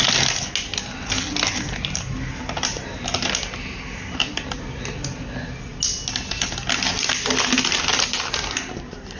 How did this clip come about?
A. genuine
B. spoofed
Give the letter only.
A